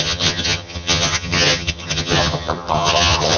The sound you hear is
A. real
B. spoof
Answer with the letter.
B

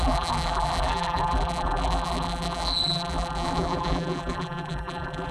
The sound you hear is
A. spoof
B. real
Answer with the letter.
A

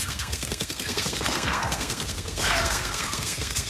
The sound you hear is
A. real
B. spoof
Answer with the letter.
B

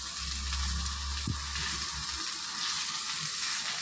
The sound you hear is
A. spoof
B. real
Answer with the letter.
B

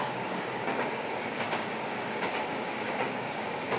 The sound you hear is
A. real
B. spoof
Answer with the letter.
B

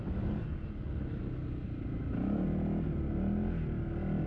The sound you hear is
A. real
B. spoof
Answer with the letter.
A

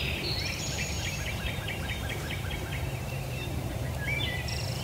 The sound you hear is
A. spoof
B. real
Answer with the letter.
A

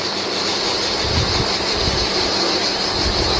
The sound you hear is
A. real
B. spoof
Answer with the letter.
A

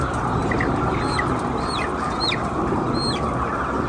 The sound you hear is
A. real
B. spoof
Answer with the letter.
A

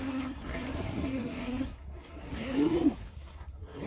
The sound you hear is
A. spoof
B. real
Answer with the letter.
A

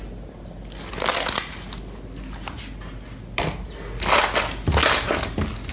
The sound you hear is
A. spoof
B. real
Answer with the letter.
B